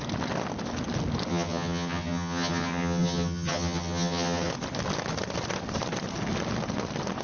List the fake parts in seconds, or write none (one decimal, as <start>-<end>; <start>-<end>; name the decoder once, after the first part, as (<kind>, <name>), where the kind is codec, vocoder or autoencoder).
1.3-4.5 (vocoder, HiFi-GAN)